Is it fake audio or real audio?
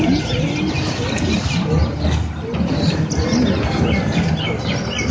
real